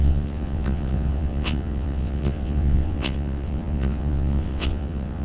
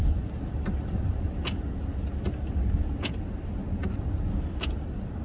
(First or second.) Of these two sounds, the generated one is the first